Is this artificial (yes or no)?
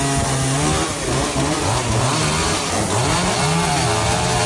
no